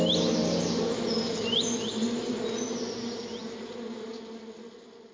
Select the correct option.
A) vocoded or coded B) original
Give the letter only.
B